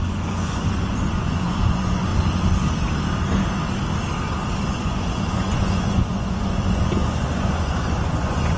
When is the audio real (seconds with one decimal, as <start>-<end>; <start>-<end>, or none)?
2.1-4.7